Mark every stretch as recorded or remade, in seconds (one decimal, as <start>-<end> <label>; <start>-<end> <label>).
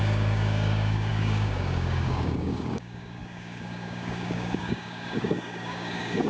0.0-6.3 remade